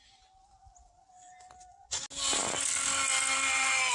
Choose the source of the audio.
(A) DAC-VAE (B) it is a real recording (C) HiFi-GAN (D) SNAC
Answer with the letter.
B